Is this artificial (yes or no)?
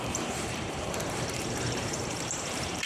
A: yes